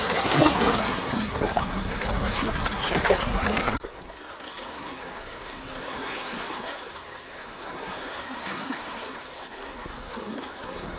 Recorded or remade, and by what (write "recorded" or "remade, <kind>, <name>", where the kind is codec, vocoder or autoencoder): remade, codec, SNAC